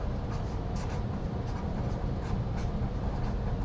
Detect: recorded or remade remade